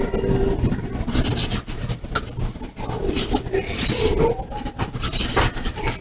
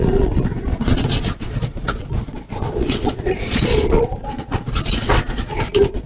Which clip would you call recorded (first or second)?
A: first